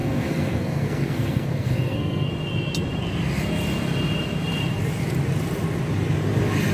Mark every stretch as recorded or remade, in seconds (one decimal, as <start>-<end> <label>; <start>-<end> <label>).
0.0-2.3 remade; 2.3-6.7 recorded